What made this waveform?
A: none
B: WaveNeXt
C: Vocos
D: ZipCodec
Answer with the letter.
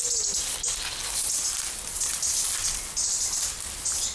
A